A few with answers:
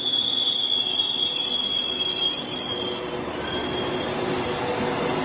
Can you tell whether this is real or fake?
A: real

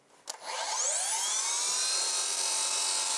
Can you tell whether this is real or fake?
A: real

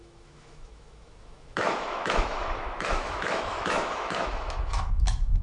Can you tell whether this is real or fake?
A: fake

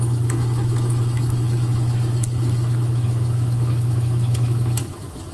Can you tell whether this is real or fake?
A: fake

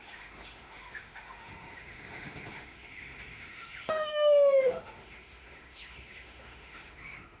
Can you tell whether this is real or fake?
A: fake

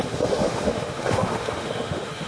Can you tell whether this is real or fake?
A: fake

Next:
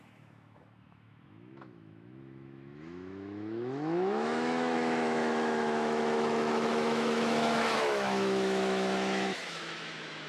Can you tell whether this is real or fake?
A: fake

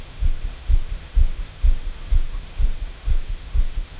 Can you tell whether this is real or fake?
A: fake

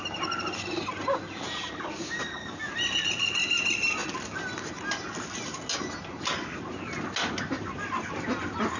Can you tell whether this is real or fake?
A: real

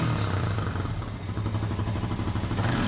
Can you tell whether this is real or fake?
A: real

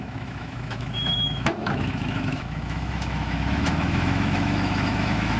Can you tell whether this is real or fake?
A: fake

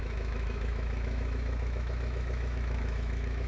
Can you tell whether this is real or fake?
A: fake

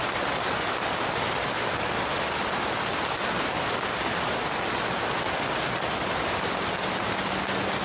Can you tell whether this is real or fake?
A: real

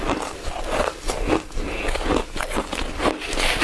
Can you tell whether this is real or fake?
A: real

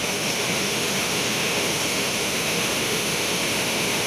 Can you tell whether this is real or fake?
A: fake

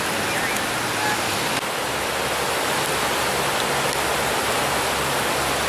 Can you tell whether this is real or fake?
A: real